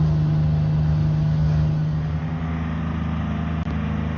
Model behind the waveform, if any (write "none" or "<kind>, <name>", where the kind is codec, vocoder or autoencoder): none